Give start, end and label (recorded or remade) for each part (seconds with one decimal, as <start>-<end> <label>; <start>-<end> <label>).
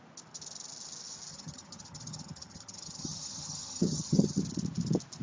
0.0-1.3 recorded; 1.3-4.4 remade; 4.4-5.2 recorded